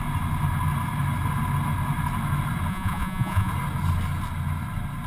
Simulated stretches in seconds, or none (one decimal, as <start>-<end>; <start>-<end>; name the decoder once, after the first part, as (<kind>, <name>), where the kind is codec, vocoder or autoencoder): 2.7-3.5 (vocoder, Vocos)